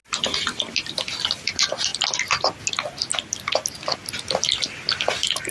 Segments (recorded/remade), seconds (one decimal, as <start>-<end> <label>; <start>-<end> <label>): 0.0-5.5 recorded